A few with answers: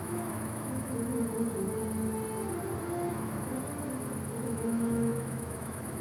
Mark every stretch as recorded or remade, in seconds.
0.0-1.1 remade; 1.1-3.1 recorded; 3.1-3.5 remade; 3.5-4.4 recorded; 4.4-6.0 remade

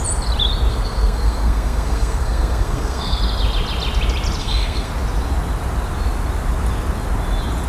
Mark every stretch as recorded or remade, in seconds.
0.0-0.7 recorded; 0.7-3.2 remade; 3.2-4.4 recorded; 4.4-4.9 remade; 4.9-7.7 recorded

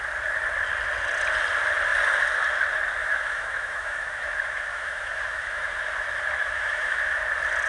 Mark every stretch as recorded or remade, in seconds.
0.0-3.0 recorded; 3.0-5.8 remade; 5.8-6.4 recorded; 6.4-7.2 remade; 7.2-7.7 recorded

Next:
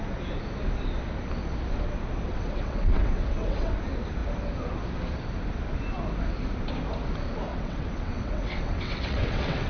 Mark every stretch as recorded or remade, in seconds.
0.0-2.3 recorded; 2.3-3.8 remade; 3.8-7.5 recorded; 7.5-9.7 remade

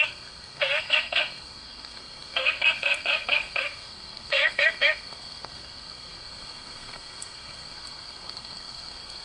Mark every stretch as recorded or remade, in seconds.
0.0-9.2 remade